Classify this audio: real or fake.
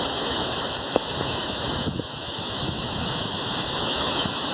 fake